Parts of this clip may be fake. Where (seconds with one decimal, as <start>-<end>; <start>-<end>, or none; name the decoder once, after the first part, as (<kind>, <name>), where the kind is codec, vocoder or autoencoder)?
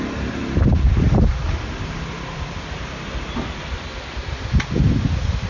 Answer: none